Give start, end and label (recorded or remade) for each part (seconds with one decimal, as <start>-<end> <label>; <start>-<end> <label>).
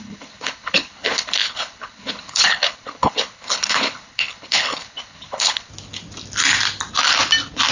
0.0-5.7 remade; 5.7-7.7 recorded